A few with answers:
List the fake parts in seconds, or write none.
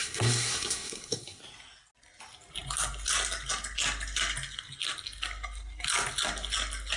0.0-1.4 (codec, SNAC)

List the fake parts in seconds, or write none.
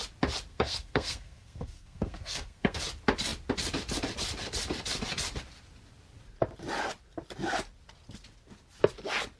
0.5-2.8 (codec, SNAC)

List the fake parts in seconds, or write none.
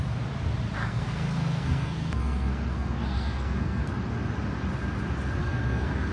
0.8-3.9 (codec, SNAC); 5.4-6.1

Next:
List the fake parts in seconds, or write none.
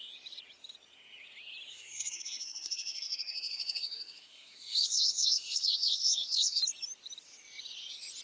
1.7-6.6 (codec, SNAC)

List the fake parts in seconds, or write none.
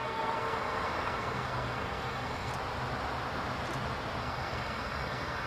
0.0-2.5 (codec, SNAC); 4.2-5.5